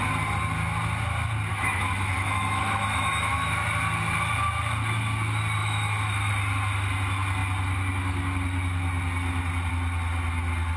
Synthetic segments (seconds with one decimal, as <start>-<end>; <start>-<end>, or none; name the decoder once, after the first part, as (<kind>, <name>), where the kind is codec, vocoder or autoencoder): 1.5-3.6 (autoencoder, DAC-VAE); 5.6-6.3